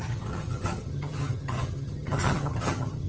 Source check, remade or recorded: remade